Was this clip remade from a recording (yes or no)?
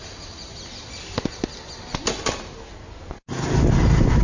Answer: no